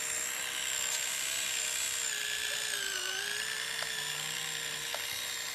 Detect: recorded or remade recorded